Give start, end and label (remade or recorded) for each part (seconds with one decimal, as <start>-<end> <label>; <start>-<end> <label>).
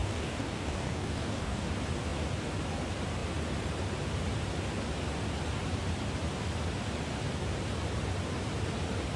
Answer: 0.0-1.7 remade; 1.7-9.2 recorded